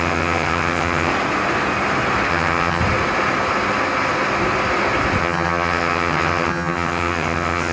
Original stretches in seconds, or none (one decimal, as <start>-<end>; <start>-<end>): 1.1-2.3; 2.8-5.2